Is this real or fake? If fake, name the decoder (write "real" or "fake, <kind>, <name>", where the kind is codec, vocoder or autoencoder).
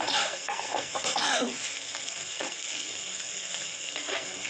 fake, codec, SNAC